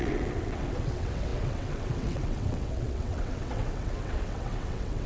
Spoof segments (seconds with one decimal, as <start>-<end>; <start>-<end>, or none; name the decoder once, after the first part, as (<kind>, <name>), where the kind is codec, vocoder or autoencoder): 0.0-5.1 (vocoder, WaveNeXt)